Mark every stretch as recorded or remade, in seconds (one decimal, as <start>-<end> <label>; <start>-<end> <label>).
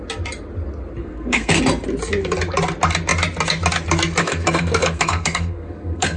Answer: 0.0-1.0 recorded; 1.0-1.6 remade; 1.6-4.2 recorded; 4.2-6.2 remade